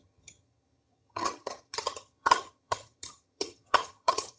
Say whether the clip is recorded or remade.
remade